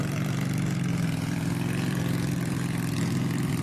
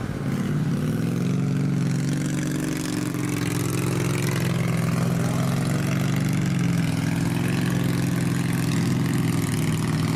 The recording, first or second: second